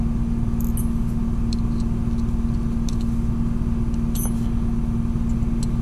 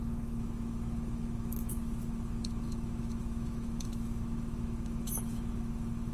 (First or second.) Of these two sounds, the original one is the first